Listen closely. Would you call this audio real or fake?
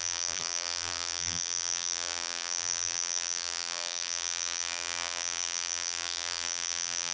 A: fake